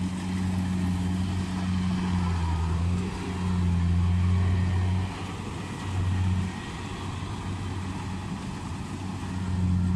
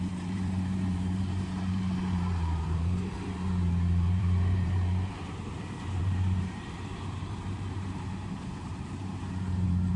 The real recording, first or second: first